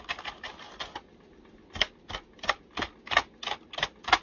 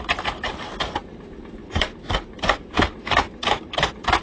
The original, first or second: first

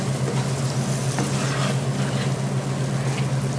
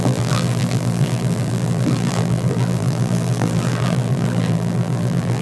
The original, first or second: first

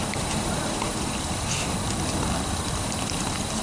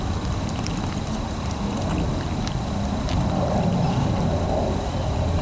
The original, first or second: second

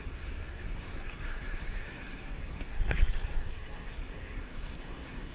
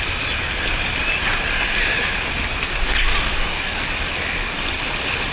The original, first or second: second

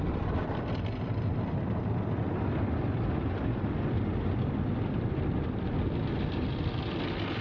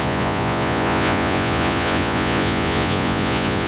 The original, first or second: first